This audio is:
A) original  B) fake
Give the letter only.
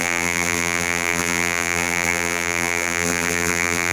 B